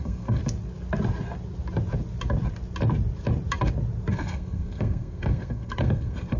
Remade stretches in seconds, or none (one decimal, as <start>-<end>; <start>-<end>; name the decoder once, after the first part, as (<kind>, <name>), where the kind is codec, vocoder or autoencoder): 0.0-0.4 (codec, SNAC); 4.1-6.4